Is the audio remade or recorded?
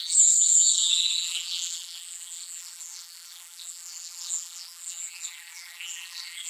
remade